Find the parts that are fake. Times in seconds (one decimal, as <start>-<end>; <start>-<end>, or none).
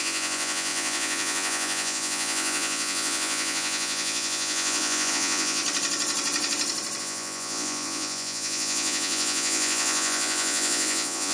0.0-5.6; 7.0-11.3